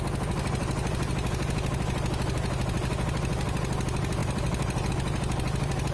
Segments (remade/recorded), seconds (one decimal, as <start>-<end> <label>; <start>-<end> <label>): 0.0-4.2 recorded; 4.2-4.9 remade; 4.9-5.9 recorded